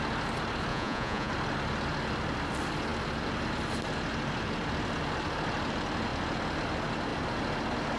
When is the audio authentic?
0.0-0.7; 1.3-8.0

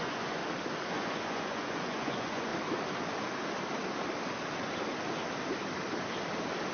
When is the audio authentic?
0.4-0.9; 2.5-6.7

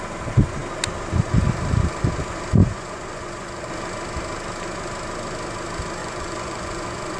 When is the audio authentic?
0.0-2.6; 3.7-6.0

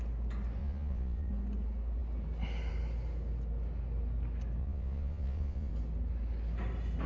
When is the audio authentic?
0.0-0.6; 1.3-4.6; 5.7-7.1

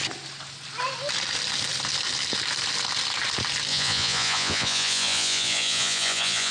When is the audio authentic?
0.0-3.7